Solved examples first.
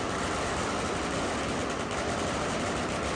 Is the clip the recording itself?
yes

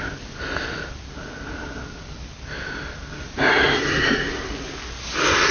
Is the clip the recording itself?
yes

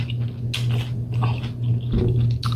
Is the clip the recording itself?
yes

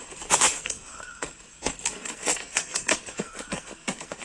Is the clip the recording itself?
no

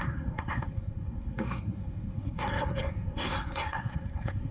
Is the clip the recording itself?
no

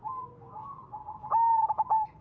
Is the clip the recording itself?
yes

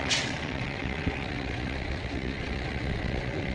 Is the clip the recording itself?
no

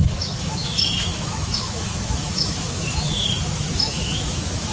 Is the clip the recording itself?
no